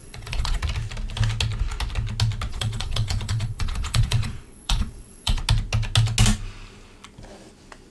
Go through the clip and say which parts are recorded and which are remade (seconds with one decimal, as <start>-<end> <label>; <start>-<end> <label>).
0.0-0.6 remade; 0.6-2.5 recorded; 2.5-5.4 remade; 5.4-7.9 recorded